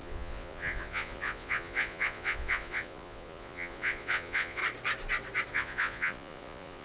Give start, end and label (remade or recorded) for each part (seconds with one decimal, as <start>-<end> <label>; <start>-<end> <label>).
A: 0.0-4.6 remade; 4.6-5.5 recorded; 5.5-6.8 remade

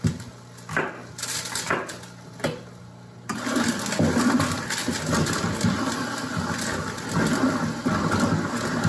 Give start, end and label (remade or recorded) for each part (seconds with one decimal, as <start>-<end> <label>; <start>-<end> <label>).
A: 0.0-8.9 recorded

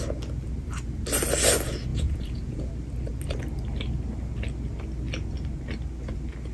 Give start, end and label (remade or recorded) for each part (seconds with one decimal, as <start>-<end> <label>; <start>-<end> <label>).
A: 0.0-1.9 recorded; 1.9-2.7 remade; 2.7-6.5 recorded

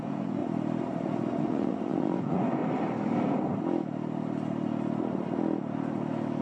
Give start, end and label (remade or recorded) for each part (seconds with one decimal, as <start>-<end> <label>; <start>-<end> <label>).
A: 0.0-0.4 remade; 0.4-1.4 recorded; 1.4-2.6 remade; 2.6-6.4 recorded

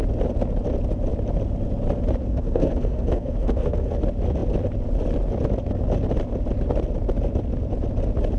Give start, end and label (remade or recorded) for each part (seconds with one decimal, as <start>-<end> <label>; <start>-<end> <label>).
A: 0.0-2.2 recorded; 2.2-4.0 remade; 4.0-8.4 recorded

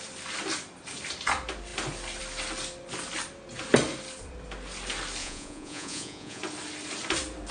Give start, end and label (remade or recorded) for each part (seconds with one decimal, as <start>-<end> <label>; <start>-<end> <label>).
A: 0.0-5.2 recorded; 5.2-6.4 remade; 6.4-7.5 recorded